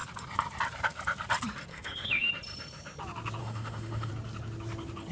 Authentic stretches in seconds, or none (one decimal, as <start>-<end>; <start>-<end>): 0.0-1.7; 2.3-3.4; 4.1-5.1